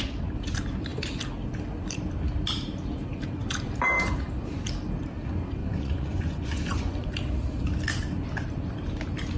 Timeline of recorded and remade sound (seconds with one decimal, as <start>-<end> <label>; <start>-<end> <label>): 0.0-5.6 recorded; 5.6-7.1 remade; 7.1-9.4 recorded